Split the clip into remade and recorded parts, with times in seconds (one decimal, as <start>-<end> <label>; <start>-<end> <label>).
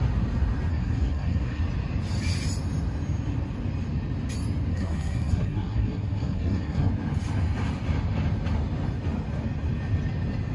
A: 0.0-0.7 recorded; 0.7-1.6 remade; 1.6-4.7 recorded; 4.7-6.9 remade; 6.9-10.5 recorded